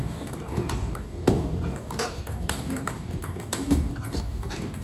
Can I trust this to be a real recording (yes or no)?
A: no